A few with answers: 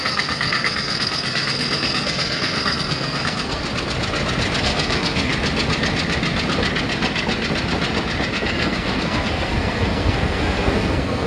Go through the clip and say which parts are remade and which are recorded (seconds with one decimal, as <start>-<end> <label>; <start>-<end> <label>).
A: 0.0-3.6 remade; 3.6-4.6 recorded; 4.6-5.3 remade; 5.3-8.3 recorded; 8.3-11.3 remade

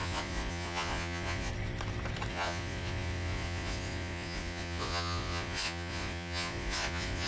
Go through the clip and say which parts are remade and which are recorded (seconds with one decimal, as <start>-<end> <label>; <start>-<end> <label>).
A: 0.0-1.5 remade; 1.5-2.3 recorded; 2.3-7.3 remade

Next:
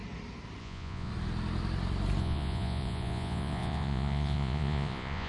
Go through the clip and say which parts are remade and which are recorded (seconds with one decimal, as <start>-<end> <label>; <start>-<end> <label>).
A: 0.0-0.6 recorded; 0.6-1.1 remade; 1.1-2.2 recorded; 2.2-5.3 remade

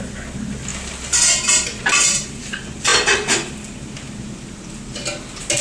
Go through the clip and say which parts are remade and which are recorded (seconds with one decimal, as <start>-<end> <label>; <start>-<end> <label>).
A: 0.0-5.6 recorded